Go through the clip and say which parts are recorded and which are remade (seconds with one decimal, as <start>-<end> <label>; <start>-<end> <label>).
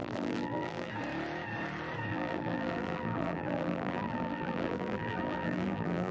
0.0-0.9 remade; 0.9-2.1 recorded; 2.1-6.1 remade